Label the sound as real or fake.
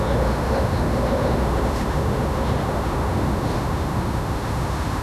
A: fake